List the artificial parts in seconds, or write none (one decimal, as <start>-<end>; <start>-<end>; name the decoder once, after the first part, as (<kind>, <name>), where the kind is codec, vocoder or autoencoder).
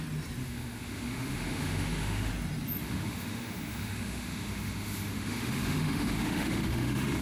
0.4-2.3 (autoencoder, DAC-VAE); 2.8-7.2